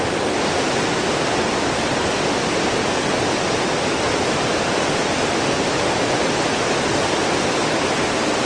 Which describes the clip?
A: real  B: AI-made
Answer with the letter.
A